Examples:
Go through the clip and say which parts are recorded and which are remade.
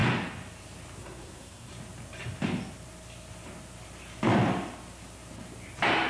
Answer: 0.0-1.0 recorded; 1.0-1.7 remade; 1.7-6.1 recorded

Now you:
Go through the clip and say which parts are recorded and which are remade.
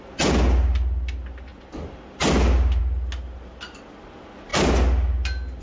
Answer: 0.0-5.6 recorded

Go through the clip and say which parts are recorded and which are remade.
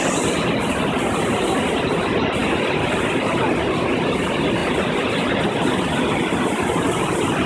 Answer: 0.0-7.5 recorded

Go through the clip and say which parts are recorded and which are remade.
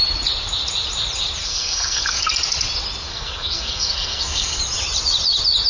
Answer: 0.0-1.4 recorded; 1.4-2.2 remade; 2.2-3.1 recorded; 3.1-4.6 remade; 4.6-5.7 recorded